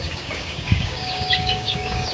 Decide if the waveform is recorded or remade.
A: remade